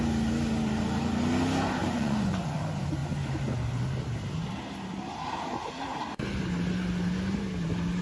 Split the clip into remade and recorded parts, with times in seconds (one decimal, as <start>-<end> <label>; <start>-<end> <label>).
0.0-1.8 recorded; 1.8-2.6 remade; 2.6-8.0 recorded

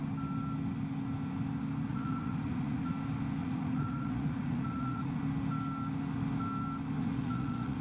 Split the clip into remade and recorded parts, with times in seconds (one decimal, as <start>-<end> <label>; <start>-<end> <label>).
0.0-1.9 recorded; 1.9-2.9 remade; 2.9-3.4 recorded; 3.4-5.2 remade; 5.2-7.0 recorded; 7.0-7.8 remade

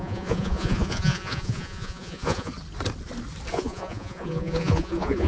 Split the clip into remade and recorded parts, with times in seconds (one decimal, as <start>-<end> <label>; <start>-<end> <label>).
0.0-2.5 remade; 2.5-3.5 recorded; 3.5-5.3 remade